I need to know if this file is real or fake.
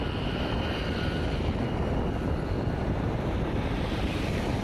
real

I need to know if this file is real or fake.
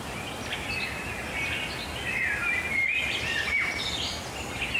real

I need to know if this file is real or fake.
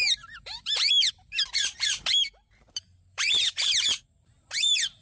fake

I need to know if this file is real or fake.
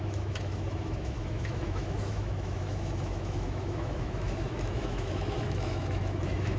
fake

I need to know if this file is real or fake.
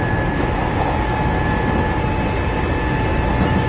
real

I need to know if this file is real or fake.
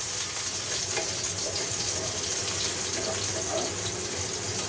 real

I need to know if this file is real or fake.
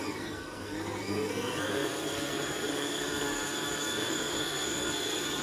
fake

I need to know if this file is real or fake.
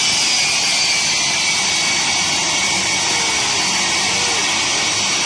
real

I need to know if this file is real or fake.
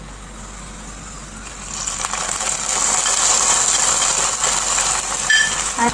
real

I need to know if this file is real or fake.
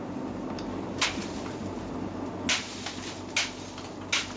real